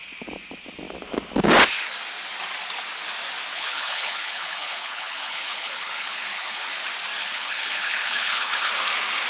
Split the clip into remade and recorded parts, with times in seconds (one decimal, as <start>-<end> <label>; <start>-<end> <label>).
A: 0.0-3.5 recorded; 3.5-6.7 remade; 6.7-7.2 recorded; 7.2-8.7 remade; 8.7-9.3 recorded